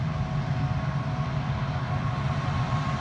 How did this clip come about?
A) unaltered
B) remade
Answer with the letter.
B